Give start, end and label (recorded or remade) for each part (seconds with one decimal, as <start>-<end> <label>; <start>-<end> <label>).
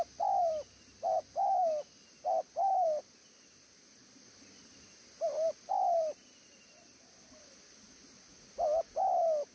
0.0-9.5 recorded